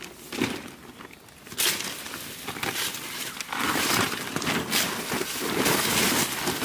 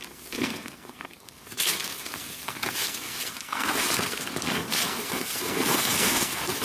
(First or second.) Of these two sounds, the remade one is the second